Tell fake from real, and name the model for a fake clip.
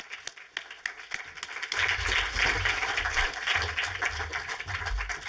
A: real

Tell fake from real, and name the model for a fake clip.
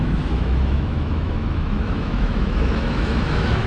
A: fake, autoencoder, DAC-VAE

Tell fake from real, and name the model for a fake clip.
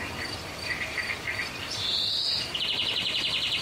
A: real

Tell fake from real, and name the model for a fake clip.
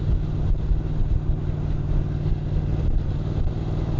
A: real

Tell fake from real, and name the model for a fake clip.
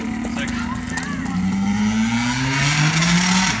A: real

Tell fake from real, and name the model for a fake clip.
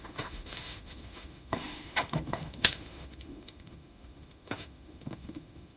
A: fake, autoencoder, DAC-VAE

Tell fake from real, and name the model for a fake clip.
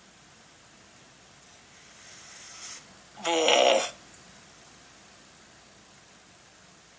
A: real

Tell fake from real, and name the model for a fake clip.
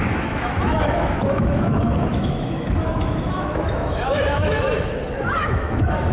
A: fake, autoencoder, DAC-VAE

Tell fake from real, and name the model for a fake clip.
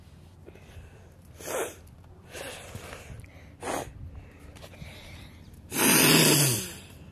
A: real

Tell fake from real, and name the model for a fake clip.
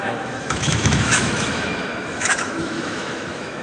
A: fake, autoencoder, DAC-VAE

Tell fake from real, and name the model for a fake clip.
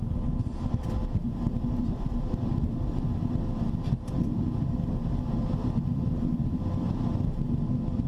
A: real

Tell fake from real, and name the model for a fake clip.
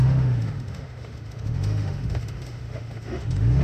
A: fake, autoencoder, DAC-VAE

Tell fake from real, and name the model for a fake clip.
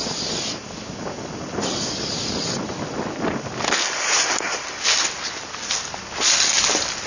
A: real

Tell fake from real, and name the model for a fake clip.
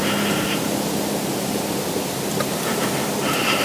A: real